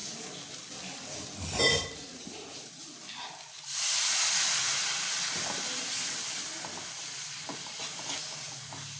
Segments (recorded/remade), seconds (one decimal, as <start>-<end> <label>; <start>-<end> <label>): 0.0-2.1 recorded; 2.1-2.9 remade; 2.9-9.0 recorded